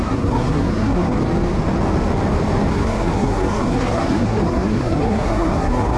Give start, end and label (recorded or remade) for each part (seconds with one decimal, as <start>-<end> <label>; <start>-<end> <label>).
0.0-1.2 remade; 1.2-2.7 recorded; 2.7-6.0 remade